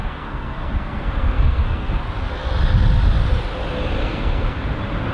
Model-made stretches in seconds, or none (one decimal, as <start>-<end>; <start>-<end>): 0.0-2.0; 4.0-4.6